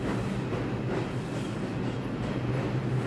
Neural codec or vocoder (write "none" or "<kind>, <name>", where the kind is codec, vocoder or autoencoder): none